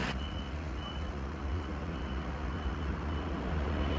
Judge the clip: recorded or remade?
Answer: remade